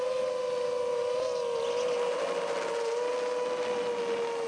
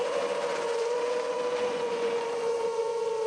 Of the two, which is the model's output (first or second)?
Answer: second